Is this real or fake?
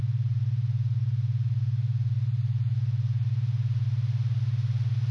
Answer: real